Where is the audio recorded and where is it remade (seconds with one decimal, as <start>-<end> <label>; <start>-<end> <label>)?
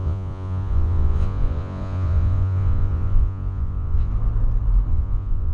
0.0-4.1 remade; 4.1-4.9 recorded; 4.9-5.5 remade